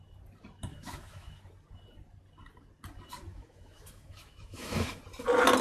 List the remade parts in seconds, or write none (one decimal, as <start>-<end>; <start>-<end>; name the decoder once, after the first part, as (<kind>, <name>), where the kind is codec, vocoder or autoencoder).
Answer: 0.7-1.4 (autoencoder, DAC-VAE); 3.3-5.0